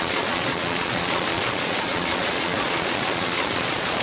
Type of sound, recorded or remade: remade